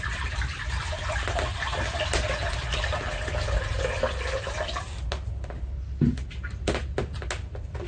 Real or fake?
real